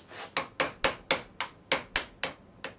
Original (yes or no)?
yes